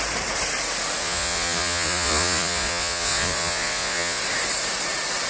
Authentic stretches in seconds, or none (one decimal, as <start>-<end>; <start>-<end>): 0.0-1.0; 4.2-5.3